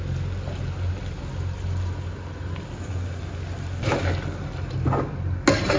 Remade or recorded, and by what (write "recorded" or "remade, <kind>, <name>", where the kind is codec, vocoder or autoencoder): recorded